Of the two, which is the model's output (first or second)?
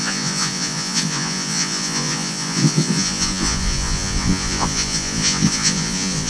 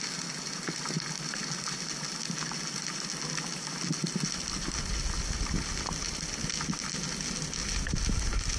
first